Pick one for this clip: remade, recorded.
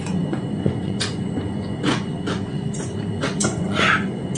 remade